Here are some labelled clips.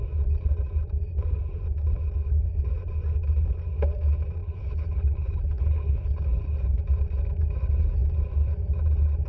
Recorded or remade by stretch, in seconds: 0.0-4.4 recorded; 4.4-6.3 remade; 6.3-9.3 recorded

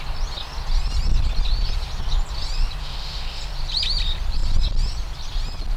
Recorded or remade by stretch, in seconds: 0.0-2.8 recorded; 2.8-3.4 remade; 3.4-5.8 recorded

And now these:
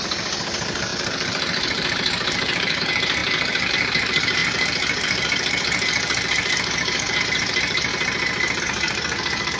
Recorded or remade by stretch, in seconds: 0.0-7.9 remade; 7.9-8.6 recorded; 8.6-9.6 remade